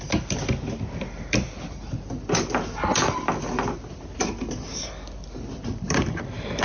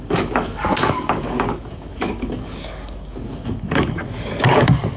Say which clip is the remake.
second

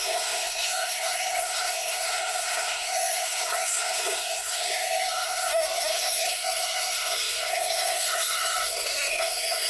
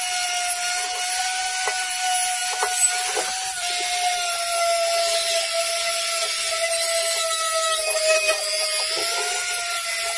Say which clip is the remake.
first